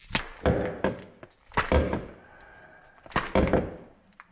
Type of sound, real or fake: real